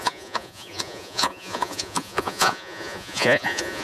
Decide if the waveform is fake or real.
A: fake